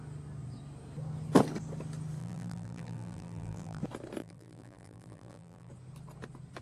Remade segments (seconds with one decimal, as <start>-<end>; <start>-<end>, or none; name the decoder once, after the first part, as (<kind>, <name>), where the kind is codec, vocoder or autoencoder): 2.2-3.8 (vocoder, BigVGAN v2); 4.2-5.7